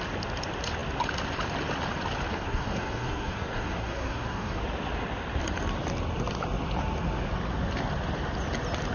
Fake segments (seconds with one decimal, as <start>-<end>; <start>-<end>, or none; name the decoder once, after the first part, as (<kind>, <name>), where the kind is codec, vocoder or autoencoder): 2.3-4.6 (codec, SNAC)